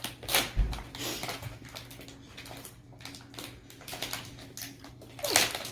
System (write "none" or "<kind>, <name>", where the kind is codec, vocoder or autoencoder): none